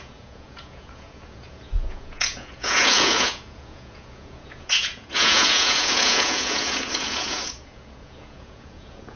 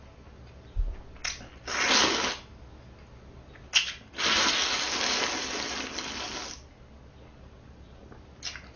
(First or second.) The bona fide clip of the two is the second